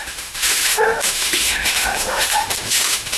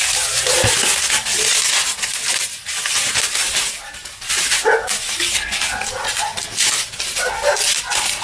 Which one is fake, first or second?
first